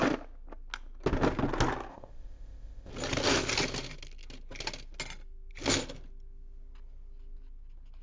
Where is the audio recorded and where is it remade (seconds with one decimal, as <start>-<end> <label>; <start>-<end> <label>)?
0.0-1.9 recorded; 1.9-2.9 remade; 2.9-8.0 recorded